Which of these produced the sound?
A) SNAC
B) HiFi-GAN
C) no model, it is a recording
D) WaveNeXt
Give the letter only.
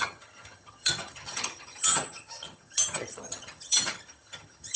B